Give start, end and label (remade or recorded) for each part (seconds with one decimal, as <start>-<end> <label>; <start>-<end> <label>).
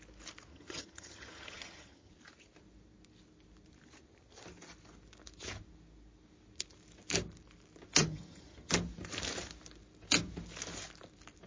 0.0-0.5 recorded; 0.5-2.1 remade; 2.1-7.9 recorded; 7.9-8.7 remade; 8.7-11.5 recorded